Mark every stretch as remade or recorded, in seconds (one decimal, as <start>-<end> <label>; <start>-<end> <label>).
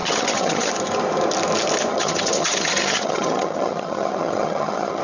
0.0-0.7 remade; 0.7-1.9 recorded; 1.9-5.0 remade